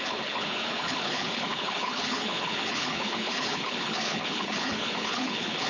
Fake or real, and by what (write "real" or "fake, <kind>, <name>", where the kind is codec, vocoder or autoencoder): fake, codec, HILCodec